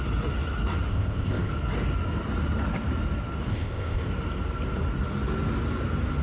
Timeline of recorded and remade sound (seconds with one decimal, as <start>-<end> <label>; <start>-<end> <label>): 0.0-0.9 recorded; 0.9-1.5 remade; 1.5-3.5 recorded; 3.5-4.1 remade; 4.1-6.2 recorded